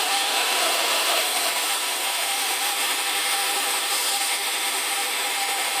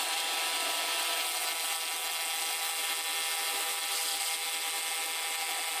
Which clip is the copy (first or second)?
first